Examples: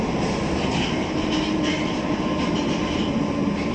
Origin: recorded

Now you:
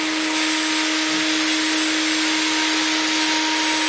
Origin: recorded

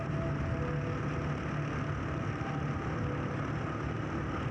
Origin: recorded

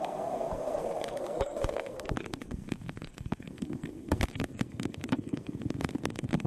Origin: remade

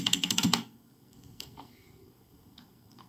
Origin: remade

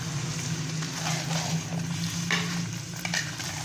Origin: recorded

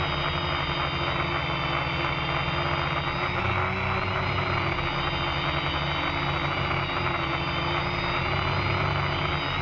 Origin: recorded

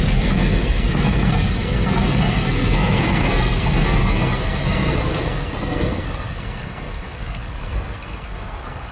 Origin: remade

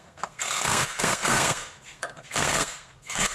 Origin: remade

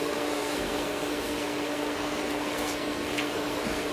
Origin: remade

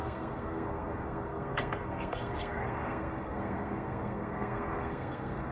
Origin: remade